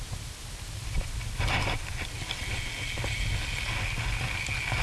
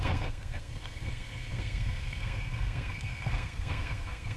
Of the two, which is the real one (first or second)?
first